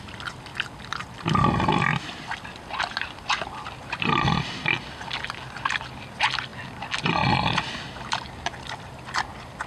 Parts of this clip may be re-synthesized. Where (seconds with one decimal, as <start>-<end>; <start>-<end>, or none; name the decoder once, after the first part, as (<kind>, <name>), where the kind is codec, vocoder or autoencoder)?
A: none